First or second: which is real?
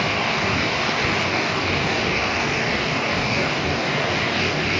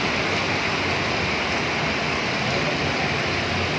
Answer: second